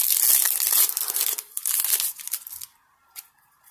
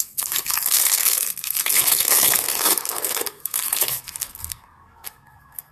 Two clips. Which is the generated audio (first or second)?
second